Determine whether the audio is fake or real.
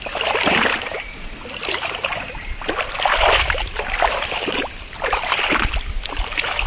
fake